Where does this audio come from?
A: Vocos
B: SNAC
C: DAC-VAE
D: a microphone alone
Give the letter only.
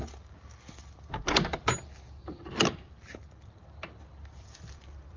D